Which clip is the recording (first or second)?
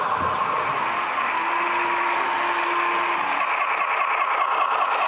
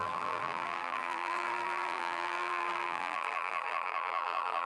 first